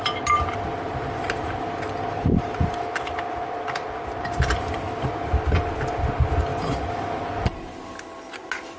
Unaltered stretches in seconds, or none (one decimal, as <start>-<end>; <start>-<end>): 0.0-6.5; 7.2-8.8